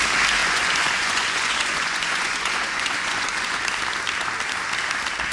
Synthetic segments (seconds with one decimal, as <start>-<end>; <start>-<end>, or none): 0.4-3.6